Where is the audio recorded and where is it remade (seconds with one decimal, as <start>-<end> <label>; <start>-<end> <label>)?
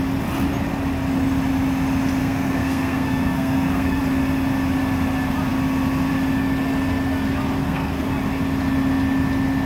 0.0-2.2 recorded; 2.2-4.0 remade; 4.0-7.6 recorded; 7.6-8.1 remade; 8.1-9.7 recorded